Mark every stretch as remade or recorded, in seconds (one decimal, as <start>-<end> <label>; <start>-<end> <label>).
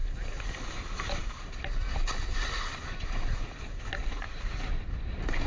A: 0.0-5.5 recorded